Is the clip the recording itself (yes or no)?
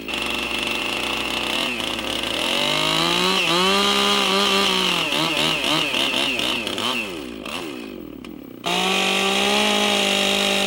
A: yes